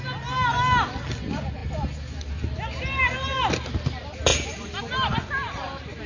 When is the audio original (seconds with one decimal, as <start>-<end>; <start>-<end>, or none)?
0.0-6.1